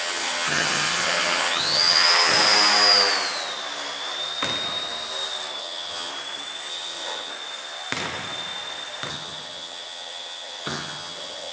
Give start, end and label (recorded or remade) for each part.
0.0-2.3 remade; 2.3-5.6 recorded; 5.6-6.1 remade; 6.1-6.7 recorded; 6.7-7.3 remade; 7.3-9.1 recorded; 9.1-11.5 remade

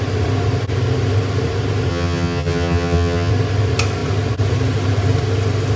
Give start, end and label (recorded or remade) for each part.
0.0-1.9 recorded; 1.9-3.3 remade; 3.3-5.8 recorded

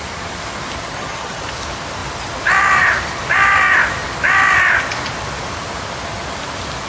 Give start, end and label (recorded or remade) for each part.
0.0-0.8 recorded; 0.8-1.4 remade; 1.4-6.9 recorded

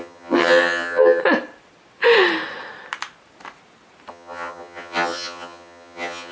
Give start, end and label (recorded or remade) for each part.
0.0-1.2 remade; 1.2-4.1 recorded; 4.1-6.3 remade